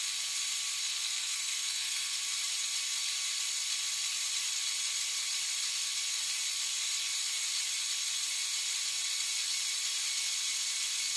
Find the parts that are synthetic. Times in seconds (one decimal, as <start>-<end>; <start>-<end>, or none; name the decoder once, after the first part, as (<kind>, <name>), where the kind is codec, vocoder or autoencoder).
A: 0.8-2.2 (codec, SNAC)